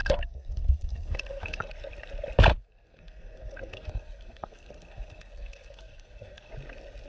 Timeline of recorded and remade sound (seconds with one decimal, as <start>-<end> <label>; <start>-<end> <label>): 0.0-1.7 remade; 1.7-2.5 recorded; 2.5-6.5 remade; 6.5-7.1 recorded